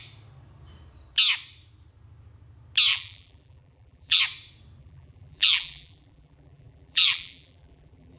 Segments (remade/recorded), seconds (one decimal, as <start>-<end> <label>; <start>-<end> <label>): 0.0-2.9 recorded; 2.9-4.2 remade; 4.2-4.8 recorded; 4.8-8.2 remade

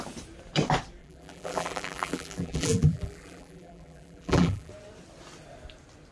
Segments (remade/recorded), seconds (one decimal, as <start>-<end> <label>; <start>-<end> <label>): 0.0-1.0 recorded; 1.0-4.7 remade; 4.7-6.1 recorded

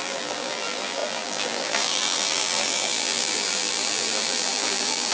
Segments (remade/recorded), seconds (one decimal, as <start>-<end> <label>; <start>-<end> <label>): 0.0-5.1 remade

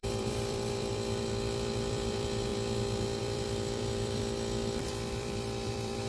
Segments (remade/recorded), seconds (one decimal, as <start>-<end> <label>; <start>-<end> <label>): 0.0-2.5 remade; 2.5-3.2 recorded; 3.2-4.2 remade; 4.2-4.9 recorded; 4.9-6.1 remade

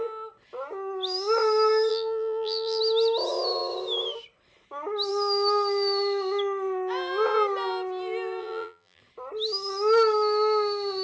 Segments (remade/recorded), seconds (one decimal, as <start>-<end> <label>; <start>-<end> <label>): 0.0-1.9 recorded; 1.9-2.8 remade; 2.8-8.4 recorded; 8.4-9.0 remade; 9.0-11.0 recorded

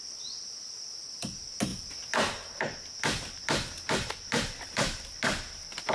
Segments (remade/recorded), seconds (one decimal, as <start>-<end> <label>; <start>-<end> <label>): 0.0-1.7 remade; 1.7-3.9 recorded; 3.9-5.9 remade

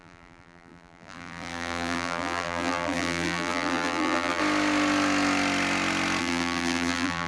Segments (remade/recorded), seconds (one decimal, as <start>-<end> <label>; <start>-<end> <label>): 0.0-4.4 remade; 4.4-6.2 recorded; 6.2-7.3 remade